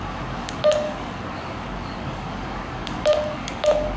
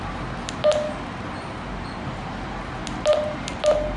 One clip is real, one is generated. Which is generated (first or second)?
first